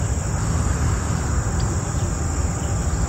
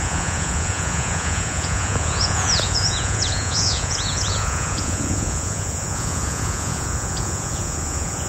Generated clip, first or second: second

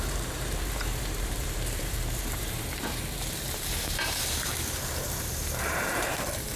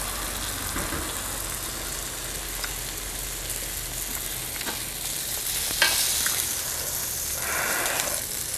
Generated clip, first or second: first